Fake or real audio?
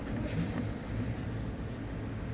real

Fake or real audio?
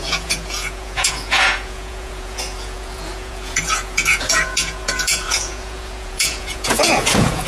fake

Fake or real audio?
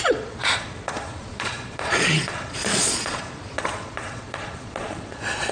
fake